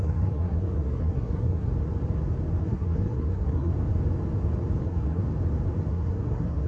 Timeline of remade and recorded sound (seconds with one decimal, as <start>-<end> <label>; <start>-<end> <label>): 0.0-1.7 remade; 1.7-2.6 recorded; 2.6-3.7 remade; 3.7-4.8 recorded; 4.8-5.2 remade; 5.2-5.9 recorded; 5.9-6.7 remade